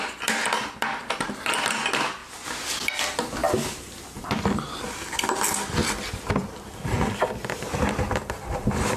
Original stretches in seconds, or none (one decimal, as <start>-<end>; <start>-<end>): 0.0-9.0